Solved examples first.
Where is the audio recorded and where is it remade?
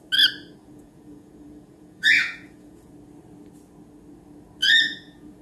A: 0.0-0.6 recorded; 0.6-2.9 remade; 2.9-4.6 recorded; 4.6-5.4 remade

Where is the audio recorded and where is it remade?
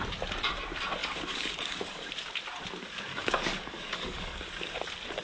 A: 0.0-1.0 recorded; 1.0-2.1 remade; 2.1-3.1 recorded; 3.1-4.5 remade; 4.5-5.2 recorded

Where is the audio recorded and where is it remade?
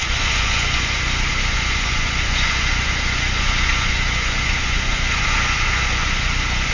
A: 0.0-6.7 remade